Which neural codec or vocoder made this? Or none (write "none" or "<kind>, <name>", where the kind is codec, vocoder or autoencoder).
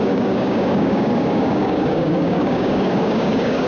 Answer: codec, DAC